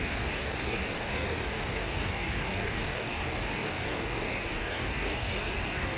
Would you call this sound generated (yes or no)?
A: yes